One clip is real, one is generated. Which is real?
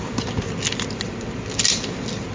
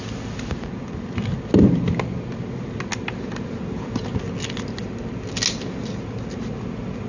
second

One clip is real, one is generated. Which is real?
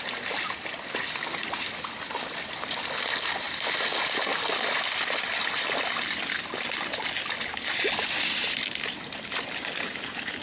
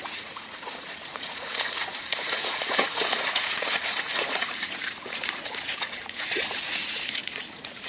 first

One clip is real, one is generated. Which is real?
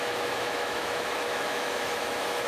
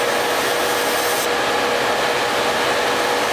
second